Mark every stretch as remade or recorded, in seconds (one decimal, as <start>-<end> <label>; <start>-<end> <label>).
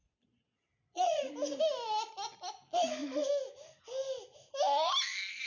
0.0-1.3 remade; 1.3-5.5 recorded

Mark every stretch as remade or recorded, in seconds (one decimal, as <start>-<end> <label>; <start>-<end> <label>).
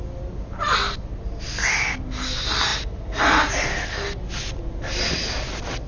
0.0-5.9 recorded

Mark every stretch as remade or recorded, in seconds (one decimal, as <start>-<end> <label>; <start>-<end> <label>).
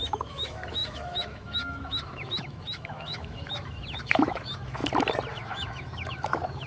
0.0-4.8 remade; 4.8-5.3 recorded; 5.3-6.7 remade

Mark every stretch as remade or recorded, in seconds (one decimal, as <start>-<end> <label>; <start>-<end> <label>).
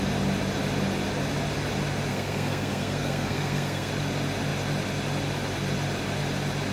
0.0-2.1 recorded; 2.1-3.9 remade; 3.9-6.7 recorded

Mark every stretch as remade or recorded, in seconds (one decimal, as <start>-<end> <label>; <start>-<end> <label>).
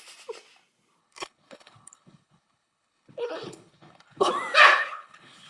0.0-1.0 recorded; 1.0-4.3 remade; 4.3-4.7 recorded; 4.7-5.5 remade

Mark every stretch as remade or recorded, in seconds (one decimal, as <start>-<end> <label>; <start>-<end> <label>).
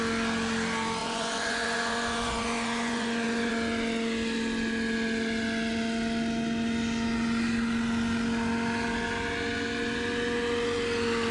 0.0-1.0 recorded; 1.0-3.5 remade; 3.5-11.3 recorded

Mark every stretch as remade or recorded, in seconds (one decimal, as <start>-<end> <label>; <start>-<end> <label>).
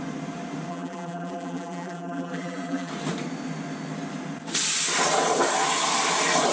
0.0-0.7 recorded; 0.7-2.9 remade; 2.9-6.5 recorded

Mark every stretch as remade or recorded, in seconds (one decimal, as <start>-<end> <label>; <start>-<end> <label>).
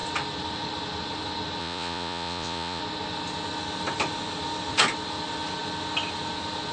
0.0-1.6 recorded; 1.6-2.8 remade; 2.8-6.7 recorded